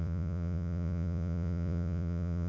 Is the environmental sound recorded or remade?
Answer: remade